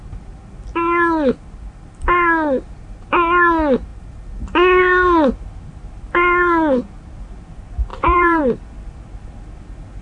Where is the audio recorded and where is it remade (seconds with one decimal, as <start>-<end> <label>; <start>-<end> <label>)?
0.0-7.9 recorded; 7.9-8.4 remade; 8.4-10.0 recorded